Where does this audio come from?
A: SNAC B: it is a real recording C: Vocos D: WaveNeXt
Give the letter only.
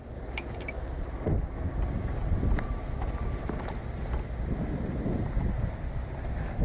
B